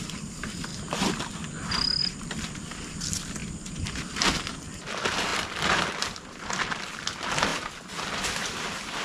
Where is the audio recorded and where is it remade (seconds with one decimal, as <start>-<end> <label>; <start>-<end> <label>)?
0.0-0.7 remade; 0.7-2.0 recorded; 2.0-3.4 remade; 3.4-4.5 recorded; 4.5-7.5 remade; 7.5-8.1 recorded; 8.1-9.0 remade

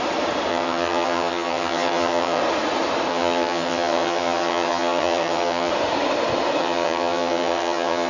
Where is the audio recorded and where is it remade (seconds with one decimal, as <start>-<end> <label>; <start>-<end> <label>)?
0.0-0.5 recorded; 0.5-2.4 remade; 2.4-3.1 recorded; 3.1-5.7 remade; 5.7-6.6 recorded; 6.6-8.1 remade

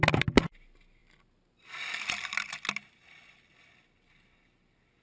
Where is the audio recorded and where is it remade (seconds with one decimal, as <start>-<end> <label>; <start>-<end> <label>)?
0.0-5.0 recorded

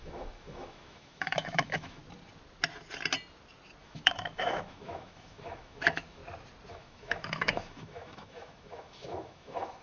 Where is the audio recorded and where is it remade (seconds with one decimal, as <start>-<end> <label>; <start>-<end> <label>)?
0.0-2.0 remade; 2.0-3.8 recorded; 3.8-6.2 remade; 6.2-6.7 recorded; 6.7-9.8 remade

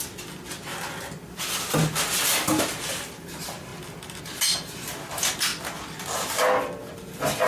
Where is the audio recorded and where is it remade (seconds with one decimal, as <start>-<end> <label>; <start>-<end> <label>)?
0.0-7.5 recorded

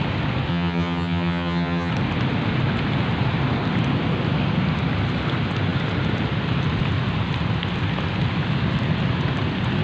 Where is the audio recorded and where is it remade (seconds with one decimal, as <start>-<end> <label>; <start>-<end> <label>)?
0.0-0.5 recorded; 0.5-1.9 remade; 1.9-9.8 recorded

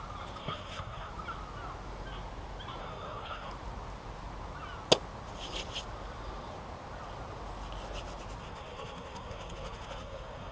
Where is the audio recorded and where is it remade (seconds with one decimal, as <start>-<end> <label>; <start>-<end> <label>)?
0.0-0.4 recorded; 0.4-1.1 remade; 1.1-2.8 recorded; 2.8-3.5 remade; 3.5-8.4 recorded; 8.4-10.5 remade

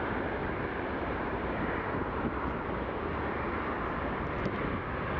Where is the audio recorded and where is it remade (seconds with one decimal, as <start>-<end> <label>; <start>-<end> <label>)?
0.0-0.4 recorded; 0.4-3.1 remade; 3.1-5.2 recorded